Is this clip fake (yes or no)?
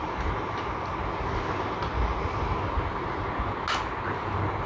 no